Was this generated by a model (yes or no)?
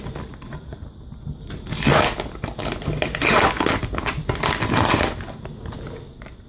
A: no